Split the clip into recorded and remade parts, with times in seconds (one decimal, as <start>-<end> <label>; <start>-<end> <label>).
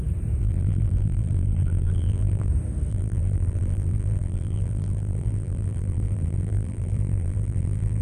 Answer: 0.0-0.4 recorded; 0.4-2.5 remade; 2.5-2.9 recorded; 2.9-8.0 remade